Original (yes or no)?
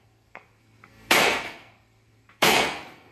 no